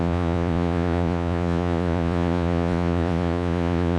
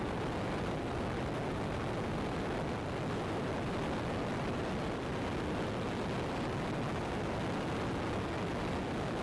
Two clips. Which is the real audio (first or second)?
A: second